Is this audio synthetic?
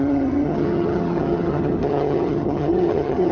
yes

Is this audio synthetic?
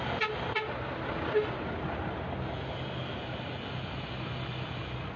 no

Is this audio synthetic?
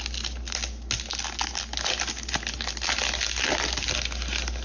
no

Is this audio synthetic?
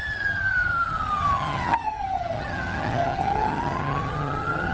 yes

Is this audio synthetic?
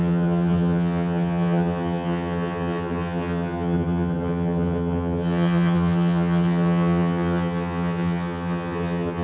yes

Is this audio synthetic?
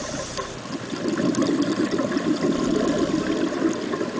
no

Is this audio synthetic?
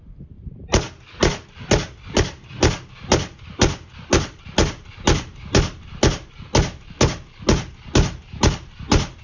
no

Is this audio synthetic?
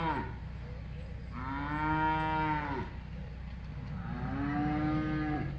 no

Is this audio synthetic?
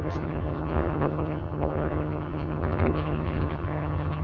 yes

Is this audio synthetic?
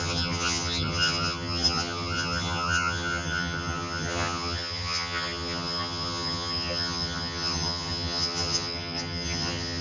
yes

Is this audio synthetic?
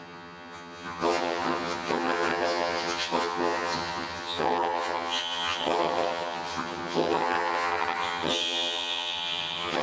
yes